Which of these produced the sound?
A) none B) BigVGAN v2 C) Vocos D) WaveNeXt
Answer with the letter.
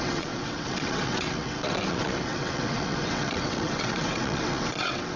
D